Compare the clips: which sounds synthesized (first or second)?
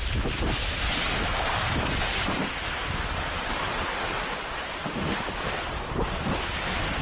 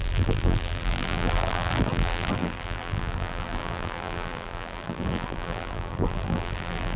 second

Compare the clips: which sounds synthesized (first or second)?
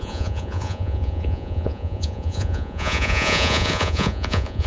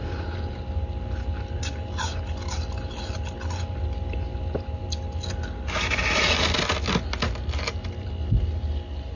first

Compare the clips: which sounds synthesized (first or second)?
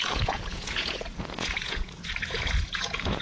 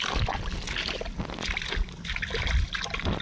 first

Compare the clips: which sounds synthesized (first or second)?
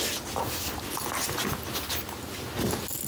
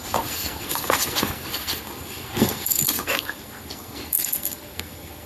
second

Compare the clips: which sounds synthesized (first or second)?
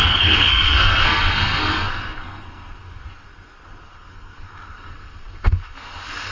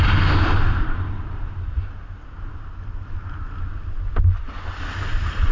first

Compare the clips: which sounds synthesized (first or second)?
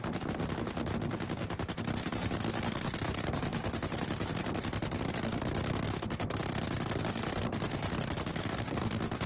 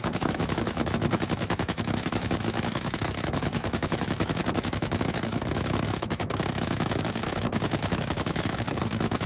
second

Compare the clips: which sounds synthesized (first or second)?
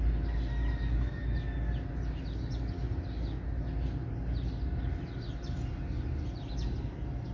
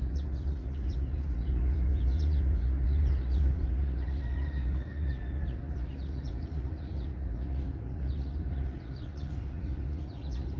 second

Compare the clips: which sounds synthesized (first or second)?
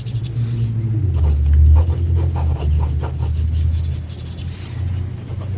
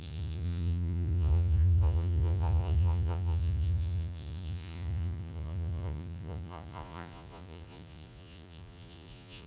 second